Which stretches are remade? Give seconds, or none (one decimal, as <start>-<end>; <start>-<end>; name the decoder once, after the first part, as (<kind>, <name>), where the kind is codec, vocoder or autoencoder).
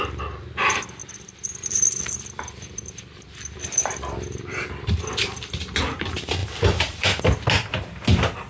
1.0-4.9 (vocoder, BigVGAN v2); 6.4-7.2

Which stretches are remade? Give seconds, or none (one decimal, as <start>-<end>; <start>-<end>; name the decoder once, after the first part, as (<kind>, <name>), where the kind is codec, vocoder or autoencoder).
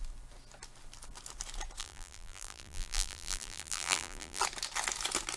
1.8-4.4 (vocoder, BigVGAN v2)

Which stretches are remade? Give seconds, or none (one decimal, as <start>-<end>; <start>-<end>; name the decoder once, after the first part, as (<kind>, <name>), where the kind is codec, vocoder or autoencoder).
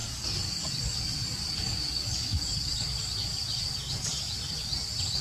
none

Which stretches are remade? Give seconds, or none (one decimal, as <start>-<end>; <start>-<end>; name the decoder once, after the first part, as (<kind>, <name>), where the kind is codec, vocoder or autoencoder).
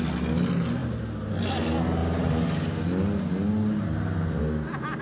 none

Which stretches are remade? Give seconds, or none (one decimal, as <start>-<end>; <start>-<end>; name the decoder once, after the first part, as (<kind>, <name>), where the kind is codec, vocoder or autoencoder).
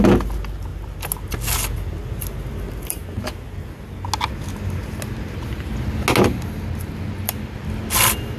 none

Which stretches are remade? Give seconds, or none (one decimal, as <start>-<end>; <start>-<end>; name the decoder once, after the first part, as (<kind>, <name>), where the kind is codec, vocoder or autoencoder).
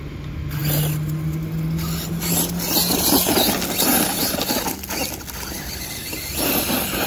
none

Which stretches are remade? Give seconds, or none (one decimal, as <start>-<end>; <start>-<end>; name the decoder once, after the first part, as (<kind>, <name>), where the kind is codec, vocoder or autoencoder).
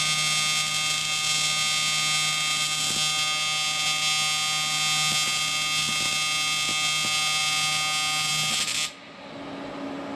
none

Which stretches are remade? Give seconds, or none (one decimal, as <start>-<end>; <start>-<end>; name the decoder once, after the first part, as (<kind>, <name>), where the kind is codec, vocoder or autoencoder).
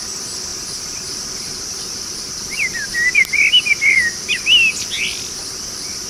0.5-3.3 (vocoder, BigVGAN v2)